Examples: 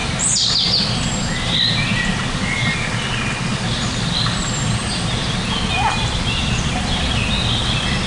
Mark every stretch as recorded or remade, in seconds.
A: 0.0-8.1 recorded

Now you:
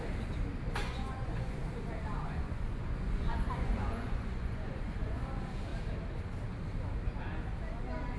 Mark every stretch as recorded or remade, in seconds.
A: 0.0-0.8 recorded; 0.8-1.6 remade; 1.6-2.1 recorded; 2.1-5.2 remade; 5.2-8.2 recorded

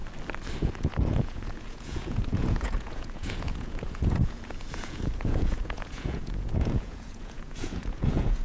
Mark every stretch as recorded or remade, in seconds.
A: 0.0-0.6 recorded; 0.6-8.4 remade